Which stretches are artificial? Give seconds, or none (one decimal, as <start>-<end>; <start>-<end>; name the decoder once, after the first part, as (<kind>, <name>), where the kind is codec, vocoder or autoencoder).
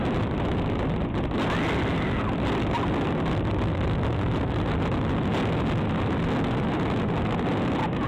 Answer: 0.0-5.3 (vocoder, BigVGAN v2)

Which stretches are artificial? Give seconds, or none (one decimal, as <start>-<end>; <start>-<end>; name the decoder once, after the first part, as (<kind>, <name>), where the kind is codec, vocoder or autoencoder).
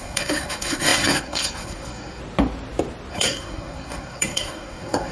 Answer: 0.0-2.2 (codec, SNAC); 3.1-5.1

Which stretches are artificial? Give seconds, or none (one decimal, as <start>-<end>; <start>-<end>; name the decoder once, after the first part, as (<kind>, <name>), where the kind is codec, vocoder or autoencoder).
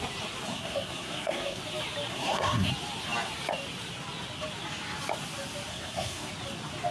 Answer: 0.5-1.6 (codec, SNAC); 2.1-2.7; 5.7-6.3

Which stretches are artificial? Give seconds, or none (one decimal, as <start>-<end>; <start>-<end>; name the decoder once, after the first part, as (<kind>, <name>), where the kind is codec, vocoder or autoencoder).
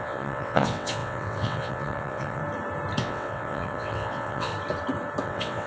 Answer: 0.0-2.4 (vocoder, WaveNeXt); 3.0-4.5; 5.2-5.7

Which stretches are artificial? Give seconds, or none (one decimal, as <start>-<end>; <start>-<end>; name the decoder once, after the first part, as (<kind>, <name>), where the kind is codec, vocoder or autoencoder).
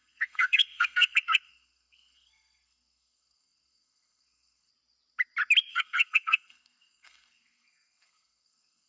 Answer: 0.0-4.7 (codec, SNAC); 5.7-8.9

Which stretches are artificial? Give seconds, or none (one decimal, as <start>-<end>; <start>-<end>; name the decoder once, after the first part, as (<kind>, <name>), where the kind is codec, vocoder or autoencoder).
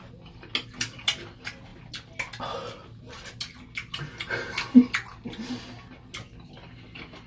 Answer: none